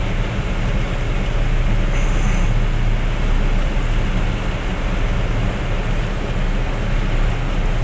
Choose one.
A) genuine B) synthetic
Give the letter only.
A